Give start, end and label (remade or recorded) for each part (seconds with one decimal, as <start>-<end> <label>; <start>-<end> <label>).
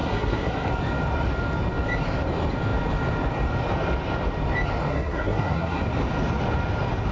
0.0-0.7 remade; 0.7-4.9 recorded; 4.9-5.8 remade; 5.8-7.1 recorded